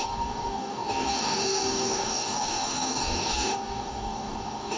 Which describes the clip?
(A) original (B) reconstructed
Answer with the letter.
B